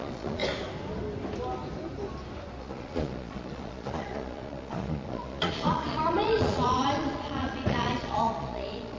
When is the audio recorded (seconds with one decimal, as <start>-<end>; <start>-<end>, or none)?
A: 0.4-2.6

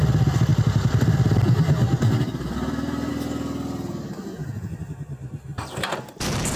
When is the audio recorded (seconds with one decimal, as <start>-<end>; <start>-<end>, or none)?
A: 0.0-0.5; 3.1-5.5